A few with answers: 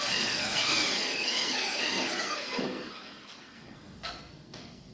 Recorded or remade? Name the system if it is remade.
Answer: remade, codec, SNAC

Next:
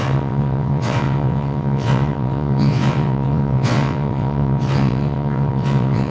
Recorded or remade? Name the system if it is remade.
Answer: remade, vocoder, WaveNeXt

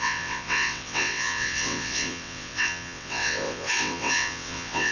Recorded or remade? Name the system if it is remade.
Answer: remade, vocoder, WaveNeXt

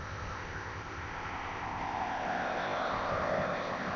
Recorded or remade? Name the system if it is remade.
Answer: remade, codec, ZipCodec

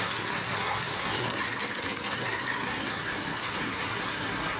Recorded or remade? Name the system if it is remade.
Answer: remade, codec, SNAC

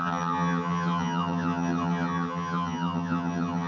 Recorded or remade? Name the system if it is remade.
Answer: remade, vocoder, HiFi-GAN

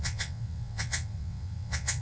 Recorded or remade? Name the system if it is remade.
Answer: remade, vocoder, WaveNeXt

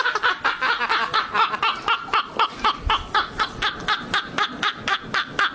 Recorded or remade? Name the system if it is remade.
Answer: recorded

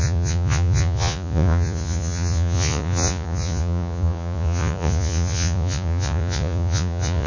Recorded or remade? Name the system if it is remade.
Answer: remade, vocoder, Vocos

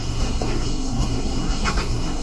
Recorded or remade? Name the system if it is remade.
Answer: remade, codec, SNAC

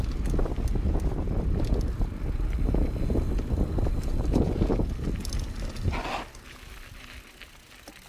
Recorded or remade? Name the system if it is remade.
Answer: recorded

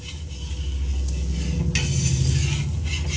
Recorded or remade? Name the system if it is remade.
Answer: recorded